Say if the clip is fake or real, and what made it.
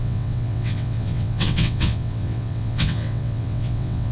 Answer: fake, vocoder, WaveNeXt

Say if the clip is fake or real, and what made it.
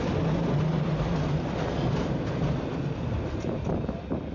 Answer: real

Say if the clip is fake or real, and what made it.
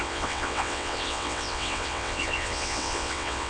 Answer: fake, vocoder, WaveNeXt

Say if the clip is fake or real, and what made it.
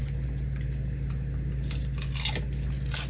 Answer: real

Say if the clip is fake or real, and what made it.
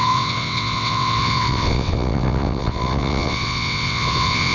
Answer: fake, vocoder, WaveNeXt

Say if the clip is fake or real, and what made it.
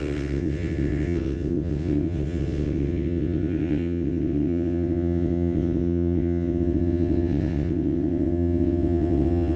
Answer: fake, vocoder, WaveNeXt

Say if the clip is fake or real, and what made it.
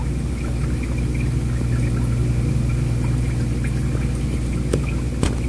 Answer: real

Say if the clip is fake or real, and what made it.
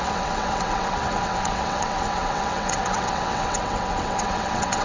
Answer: fake, vocoder, WaveNeXt